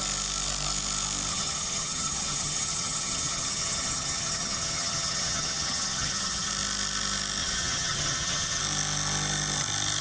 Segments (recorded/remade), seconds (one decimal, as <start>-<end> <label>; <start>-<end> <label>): 0.0-1.3 recorded; 1.3-6.5 remade; 6.5-7.4 recorded; 7.4-8.6 remade; 8.6-10.0 recorded